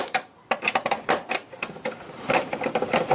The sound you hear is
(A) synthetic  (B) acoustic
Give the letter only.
A